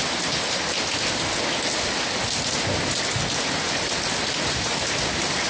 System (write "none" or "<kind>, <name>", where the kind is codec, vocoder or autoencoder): none